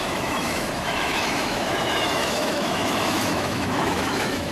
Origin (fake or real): fake